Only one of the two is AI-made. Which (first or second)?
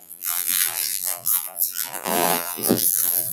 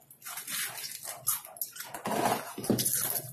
first